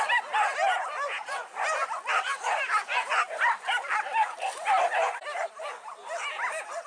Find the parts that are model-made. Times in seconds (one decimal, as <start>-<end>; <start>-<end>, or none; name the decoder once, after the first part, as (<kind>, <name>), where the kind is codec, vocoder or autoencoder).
none